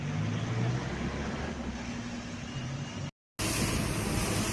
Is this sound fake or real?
real